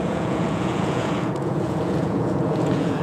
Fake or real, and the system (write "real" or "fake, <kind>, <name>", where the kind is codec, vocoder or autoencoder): fake, vocoder, Vocos